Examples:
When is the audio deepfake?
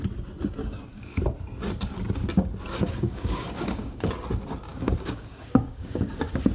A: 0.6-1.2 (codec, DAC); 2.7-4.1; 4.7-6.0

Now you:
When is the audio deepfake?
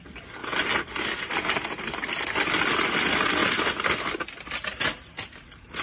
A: none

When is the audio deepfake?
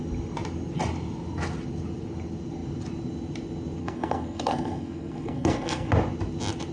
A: 3.8-5.9 (codec, SNAC)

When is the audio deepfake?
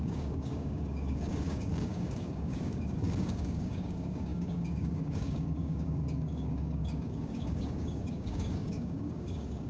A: 0.0-9.7 (codec, DAC)